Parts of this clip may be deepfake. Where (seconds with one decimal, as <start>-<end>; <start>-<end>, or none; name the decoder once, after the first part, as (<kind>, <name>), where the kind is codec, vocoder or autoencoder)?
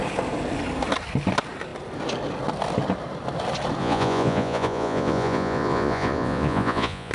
3.8-7.1 (vocoder, Vocos)